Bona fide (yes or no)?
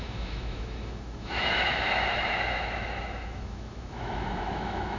no